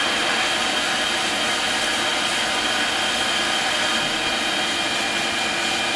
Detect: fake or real real